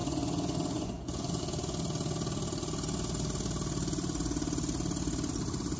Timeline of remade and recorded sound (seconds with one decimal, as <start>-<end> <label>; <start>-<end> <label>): 0.0-1.4 remade; 1.4-5.8 recorded